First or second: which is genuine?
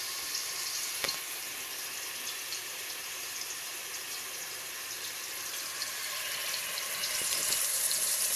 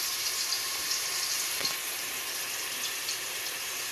second